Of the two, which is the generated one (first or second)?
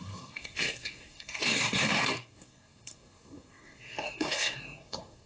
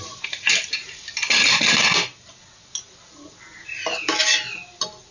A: first